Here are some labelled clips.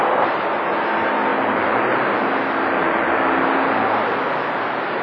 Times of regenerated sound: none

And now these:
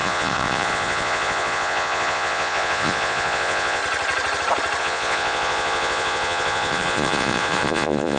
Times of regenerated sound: 0.0-3.8 (vocoder, Vocos); 4.8-8.2

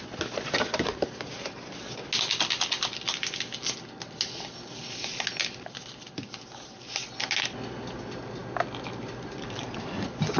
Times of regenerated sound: none

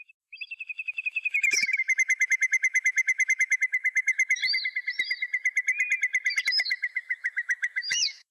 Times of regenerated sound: 0.0-4.4 (autoencoder, DAC-VAE); 6.4-8.3

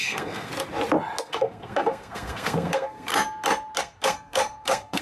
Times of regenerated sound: 0.0-0.5 (codec, SNAC); 1.2-3.1; 3.8-5.0

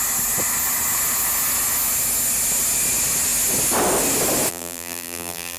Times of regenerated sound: 4.5-5.6 (vocoder, BigVGAN v2)

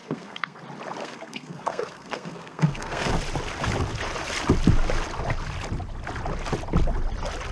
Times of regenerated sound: 0.0-0.6 (codec, SNAC); 1.0-3.1